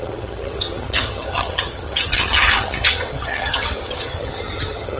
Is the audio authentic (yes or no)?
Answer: no